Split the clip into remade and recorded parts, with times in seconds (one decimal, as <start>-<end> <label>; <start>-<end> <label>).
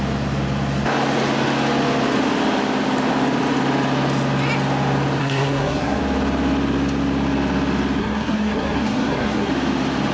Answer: 0.0-5.2 recorded; 5.2-6.0 remade; 6.0-8.0 recorded; 8.0-9.5 remade; 9.5-10.1 recorded